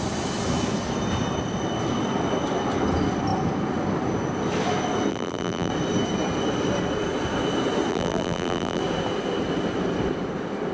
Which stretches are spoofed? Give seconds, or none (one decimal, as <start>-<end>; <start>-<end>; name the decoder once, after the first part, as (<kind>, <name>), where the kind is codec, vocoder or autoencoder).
5.1-5.7 (vocoder, BigVGAN v2); 7.9-8.8